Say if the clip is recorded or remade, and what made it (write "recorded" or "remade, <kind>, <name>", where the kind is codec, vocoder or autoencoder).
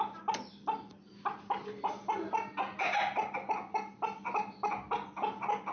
recorded